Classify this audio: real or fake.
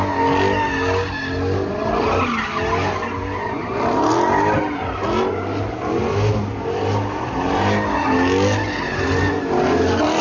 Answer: real